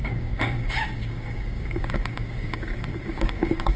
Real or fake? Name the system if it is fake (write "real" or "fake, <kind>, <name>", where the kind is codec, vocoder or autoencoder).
fake, codec, DAC